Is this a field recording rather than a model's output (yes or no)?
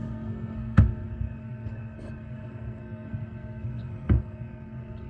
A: no